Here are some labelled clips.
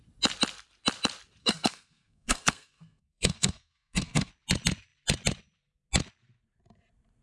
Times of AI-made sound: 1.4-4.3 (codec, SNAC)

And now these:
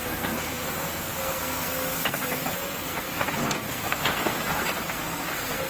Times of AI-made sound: 0.0-5.7 (codec, SNAC)

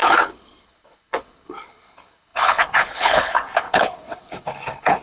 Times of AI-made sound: 0.0-5.0 (codec, HILCodec)

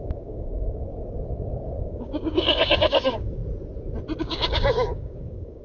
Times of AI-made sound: 0.0-0.9 (codec, DAC); 1.8-3.4; 4.2-5.6

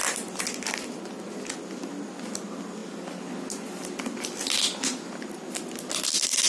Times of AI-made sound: none

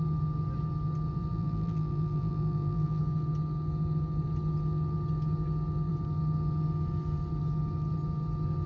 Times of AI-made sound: 1.3-3.0 (vocoder, BigVGAN v2)